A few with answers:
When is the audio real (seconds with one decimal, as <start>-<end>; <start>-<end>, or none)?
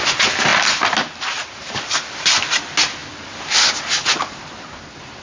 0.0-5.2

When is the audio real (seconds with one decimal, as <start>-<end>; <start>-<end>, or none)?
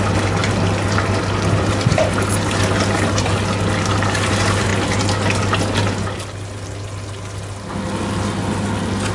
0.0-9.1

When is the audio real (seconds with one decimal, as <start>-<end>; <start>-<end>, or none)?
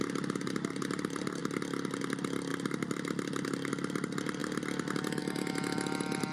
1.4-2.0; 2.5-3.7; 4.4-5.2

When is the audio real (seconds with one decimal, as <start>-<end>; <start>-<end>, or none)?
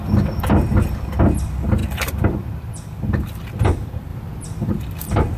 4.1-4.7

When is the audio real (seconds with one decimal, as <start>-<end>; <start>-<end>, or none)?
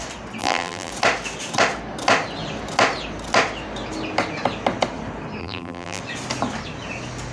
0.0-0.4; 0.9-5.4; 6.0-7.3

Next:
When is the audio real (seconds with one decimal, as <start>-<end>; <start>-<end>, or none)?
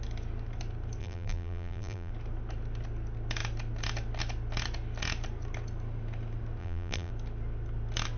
0.0-1.0; 2.1-6.6; 7.1-8.2